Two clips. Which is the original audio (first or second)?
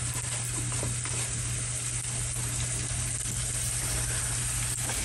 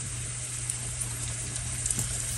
first